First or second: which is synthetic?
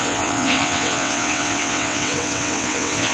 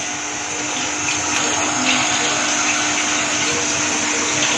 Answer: first